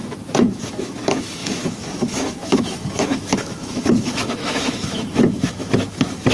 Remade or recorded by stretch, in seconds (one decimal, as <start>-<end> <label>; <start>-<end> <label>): 0.0-6.3 remade